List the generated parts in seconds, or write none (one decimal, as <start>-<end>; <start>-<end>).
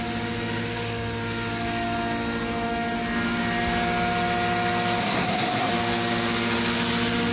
5.0-5.7